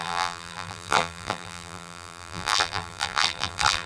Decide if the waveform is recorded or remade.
remade